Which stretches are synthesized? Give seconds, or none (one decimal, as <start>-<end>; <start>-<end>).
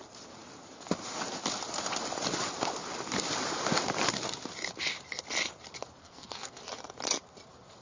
6.0-6.6